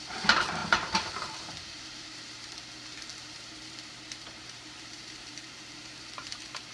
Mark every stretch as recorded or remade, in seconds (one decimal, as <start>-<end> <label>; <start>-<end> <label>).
0.0-6.7 remade